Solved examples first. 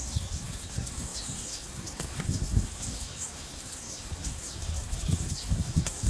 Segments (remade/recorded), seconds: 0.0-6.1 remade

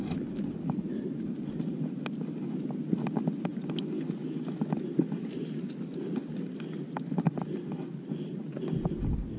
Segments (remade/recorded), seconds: 0.0-9.4 recorded

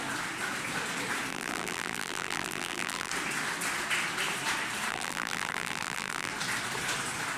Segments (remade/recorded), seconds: 0.0-1.3 recorded; 1.3-3.1 remade; 3.1-4.9 recorded; 4.9-6.3 remade; 6.3-7.4 recorded

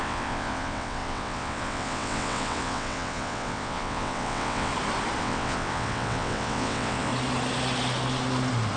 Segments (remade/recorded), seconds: 0.0-4.7 remade; 4.7-5.2 recorded; 5.2-7.1 remade; 7.1-8.8 recorded

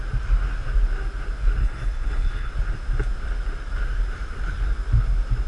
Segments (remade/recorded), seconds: 0.0-1.6 recorded; 1.6-2.5 remade; 2.5-5.5 recorded

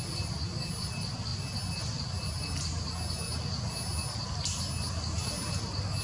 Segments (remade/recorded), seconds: 0.0-6.0 recorded

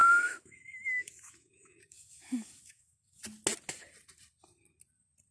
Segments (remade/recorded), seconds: 0.0-3.2 remade; 3.2-5.3 recorded

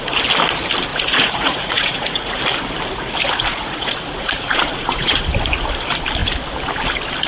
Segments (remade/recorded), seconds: 0.0-0.9 recorded; 0.9-2.4 remade; 2.4-3.5 recorded; 3.5-5.2 remade; 5.2-7.3 recorded